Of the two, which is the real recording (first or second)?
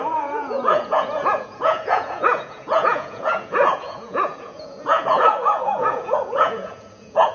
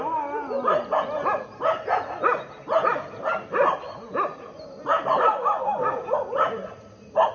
second